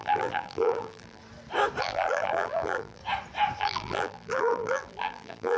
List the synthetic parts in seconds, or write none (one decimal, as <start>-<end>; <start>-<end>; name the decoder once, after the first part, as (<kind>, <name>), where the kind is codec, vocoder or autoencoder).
0.0-1.2 (vocoder, BigVGAN v2); 1.8-3.0; 3.6-5.6

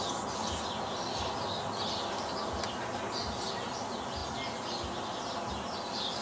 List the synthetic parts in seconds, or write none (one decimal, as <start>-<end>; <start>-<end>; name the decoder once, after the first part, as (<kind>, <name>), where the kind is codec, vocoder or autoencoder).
none

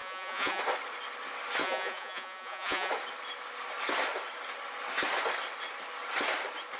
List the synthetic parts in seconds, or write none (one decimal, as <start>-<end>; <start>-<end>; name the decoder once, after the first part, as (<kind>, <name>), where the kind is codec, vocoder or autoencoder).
0.0-0.6 (vocoder, Vocos); 1.6-2.9

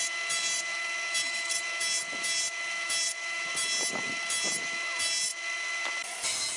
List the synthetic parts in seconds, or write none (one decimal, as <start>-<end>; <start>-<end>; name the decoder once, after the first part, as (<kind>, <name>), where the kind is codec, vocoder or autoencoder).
none

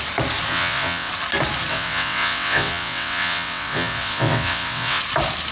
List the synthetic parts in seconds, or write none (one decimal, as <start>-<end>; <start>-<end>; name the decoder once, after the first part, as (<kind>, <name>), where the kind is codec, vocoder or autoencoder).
0.5-1.1 (vocoder, WaveNeXt); 1.7-5.0